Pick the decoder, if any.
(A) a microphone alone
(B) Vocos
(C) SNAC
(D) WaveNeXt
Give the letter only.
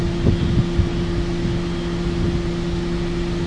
A